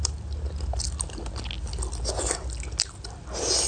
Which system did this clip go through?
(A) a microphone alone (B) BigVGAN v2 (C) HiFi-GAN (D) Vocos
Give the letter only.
A